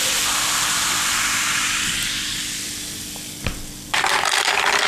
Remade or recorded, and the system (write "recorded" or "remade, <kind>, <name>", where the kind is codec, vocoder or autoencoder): recorded